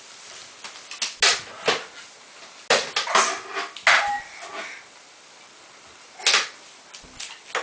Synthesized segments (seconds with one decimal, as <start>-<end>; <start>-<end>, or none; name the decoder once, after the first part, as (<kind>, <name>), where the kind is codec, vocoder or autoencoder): none